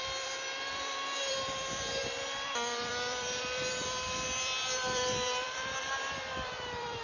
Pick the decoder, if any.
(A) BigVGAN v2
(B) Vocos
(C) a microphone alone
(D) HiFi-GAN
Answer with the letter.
A